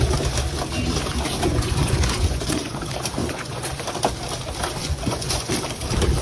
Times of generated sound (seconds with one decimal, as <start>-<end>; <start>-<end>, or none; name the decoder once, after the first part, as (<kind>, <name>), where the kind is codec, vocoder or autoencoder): 1.5-2.8 (vocoder, Vocos); 3.2-3.8; 4.8-5.5